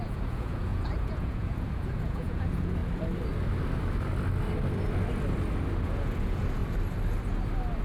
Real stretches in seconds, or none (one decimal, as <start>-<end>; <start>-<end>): 2.8-5.8; 6.6-7.8